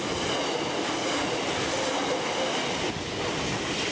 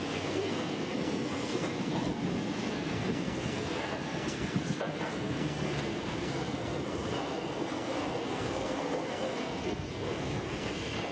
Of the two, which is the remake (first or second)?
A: second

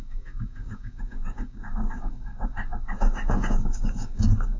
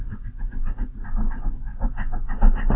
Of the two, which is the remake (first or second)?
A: first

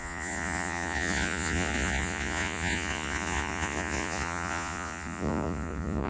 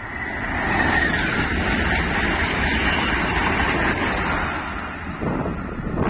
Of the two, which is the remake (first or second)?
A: first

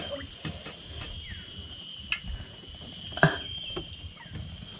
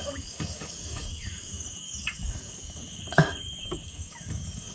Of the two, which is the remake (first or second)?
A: second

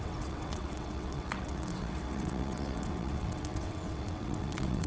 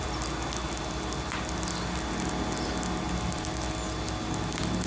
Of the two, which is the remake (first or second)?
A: first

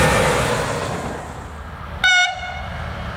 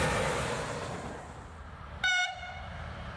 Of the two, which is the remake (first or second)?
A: second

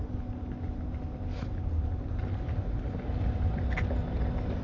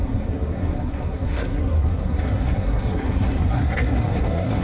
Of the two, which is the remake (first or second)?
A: second